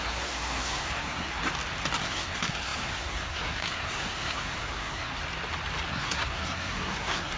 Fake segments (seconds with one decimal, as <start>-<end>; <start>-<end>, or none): 0.0-1.4; 2.0-5.2; 5.9-7.4